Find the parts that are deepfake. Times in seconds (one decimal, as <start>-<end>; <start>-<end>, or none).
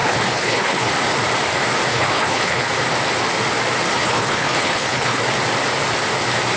0.0-0.9; 1.9-2.7; 4.0-5.2